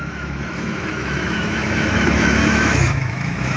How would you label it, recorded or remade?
remade